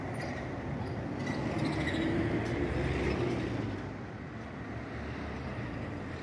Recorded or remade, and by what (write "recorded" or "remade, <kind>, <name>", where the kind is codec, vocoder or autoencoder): recorded